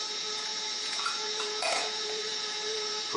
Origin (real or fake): fake